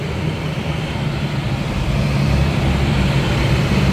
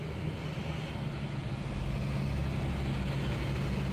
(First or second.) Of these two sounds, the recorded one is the second